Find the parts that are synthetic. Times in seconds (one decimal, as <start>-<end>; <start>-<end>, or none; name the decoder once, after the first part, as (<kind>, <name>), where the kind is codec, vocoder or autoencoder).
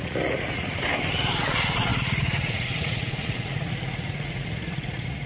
0.0-0.9 (vocoder, Vocos); 1.4-5.3